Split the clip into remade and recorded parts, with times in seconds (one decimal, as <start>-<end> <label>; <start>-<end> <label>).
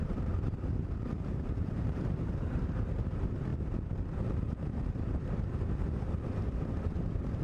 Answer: 0.0-3.5 remade; 3.5-4.5 recorded; 4.5-7.4 remade